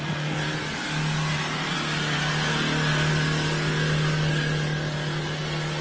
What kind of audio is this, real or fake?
real